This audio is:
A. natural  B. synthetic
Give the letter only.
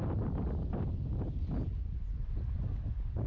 A